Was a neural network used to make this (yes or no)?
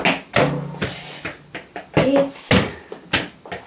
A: no